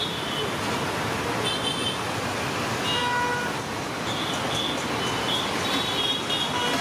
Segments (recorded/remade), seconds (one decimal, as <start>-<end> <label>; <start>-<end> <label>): 0.0-6.8 recorded